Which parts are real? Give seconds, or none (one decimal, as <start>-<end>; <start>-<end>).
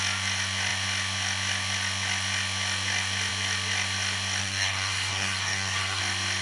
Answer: 0.0-4.4; 6.0-6.4